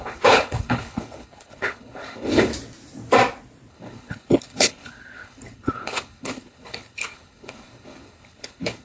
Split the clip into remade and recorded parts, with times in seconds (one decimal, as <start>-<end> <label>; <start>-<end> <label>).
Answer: 0.0-2.5 remade; 2.5-3.7 recorded; 3.7-8.8 remade